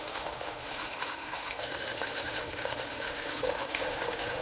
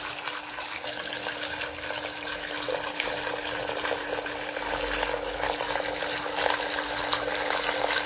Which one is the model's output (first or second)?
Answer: first